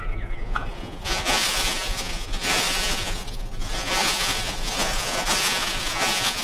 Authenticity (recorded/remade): remade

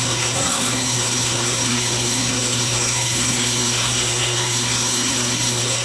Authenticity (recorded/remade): remade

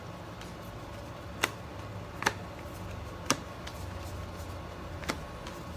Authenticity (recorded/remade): recorded